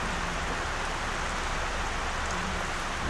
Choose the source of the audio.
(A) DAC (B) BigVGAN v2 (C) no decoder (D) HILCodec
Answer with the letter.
C